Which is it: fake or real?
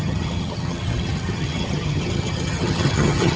fake